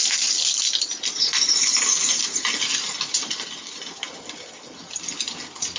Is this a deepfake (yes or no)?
no